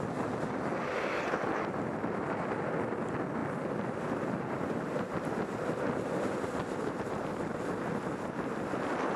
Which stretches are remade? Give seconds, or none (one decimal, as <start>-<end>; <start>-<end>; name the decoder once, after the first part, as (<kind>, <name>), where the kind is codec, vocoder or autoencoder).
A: none